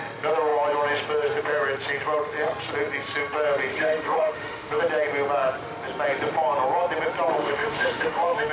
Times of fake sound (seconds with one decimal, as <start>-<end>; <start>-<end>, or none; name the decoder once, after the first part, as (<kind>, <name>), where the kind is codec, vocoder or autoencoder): 3.7-4.8 (autoencoder, DAC-VAE); 7.3-8.5